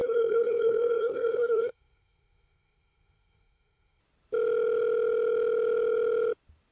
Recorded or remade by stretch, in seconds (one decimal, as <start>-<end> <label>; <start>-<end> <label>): 0.0-4.0 remade; 4.0-6.7 recorded